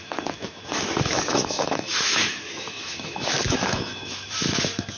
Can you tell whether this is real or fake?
fake